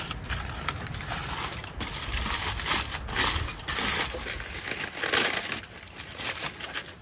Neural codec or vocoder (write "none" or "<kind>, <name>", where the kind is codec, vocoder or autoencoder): none